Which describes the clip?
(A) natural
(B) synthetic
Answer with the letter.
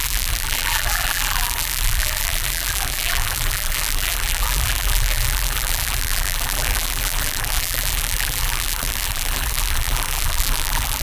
B